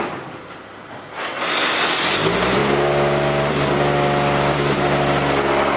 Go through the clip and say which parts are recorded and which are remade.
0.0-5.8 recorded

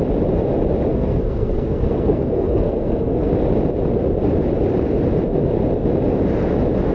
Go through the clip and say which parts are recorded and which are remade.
0.0-0.9 recorded; 0.9-3.3 remade; 3.3-6.9 recorded